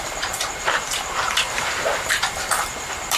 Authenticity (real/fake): fake